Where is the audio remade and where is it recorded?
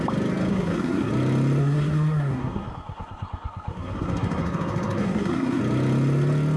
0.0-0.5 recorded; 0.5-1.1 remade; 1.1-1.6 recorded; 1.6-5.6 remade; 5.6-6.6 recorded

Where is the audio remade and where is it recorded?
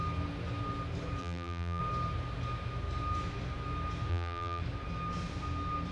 0.0-1.2 recorded; 1.2-1.8 remade; 1.8-4.1 recorded; 4.1-4.6 remade; 4.6-5.9 recorded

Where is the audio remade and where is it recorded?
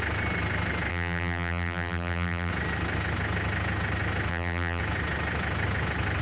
0.0-0.9 recorded; 0.9-2.5 remade; 2.5-4.3 recorded; 4.3-4.8 remade; 4.8-6.2 recorded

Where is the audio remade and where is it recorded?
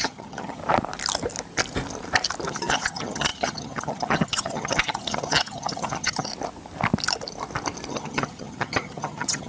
0.0-0.6 remade; 0.6-2.5 recorded; 2.5-6.3 remade; 6.3-7.9 recorded; 7.9-9.5 remade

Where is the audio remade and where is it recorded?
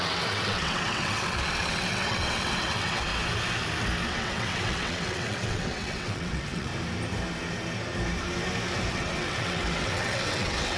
0.0-3.1 remade; 3.1-4.1 recorded; 4.1-6.7 remade; 6.7-8.9 recorded; 8.9-10.8 remade